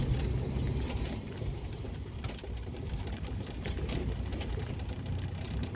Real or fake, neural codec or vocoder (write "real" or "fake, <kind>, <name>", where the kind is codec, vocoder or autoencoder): fake, vocoder, BigVGAN v2